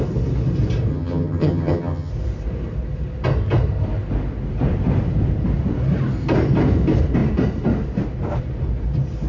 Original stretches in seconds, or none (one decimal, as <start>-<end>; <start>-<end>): 0.0-0.9; 2.1-9.3